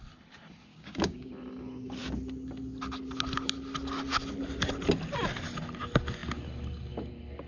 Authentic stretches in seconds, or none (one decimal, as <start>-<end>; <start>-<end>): 0.0-0.7; 1.3-7.5